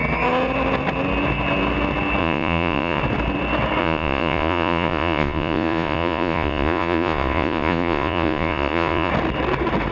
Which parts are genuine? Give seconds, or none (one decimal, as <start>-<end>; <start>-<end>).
0.0-2.2; 3.0-3.8; 9.1-9.9